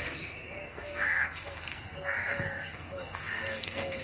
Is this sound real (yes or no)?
no